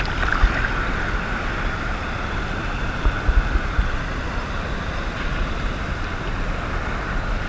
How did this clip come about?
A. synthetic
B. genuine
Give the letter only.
B